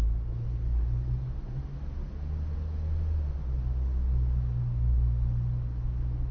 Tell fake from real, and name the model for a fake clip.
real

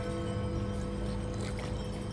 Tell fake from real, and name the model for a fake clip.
real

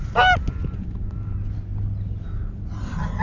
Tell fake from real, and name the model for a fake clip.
real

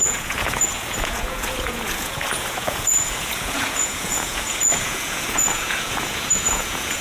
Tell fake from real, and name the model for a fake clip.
fake, vocoder, Vocos